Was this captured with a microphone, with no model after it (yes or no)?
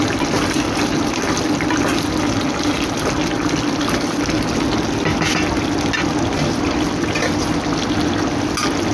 yes